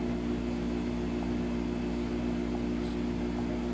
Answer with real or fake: real